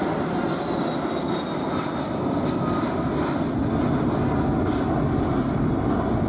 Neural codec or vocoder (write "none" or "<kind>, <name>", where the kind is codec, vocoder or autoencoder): none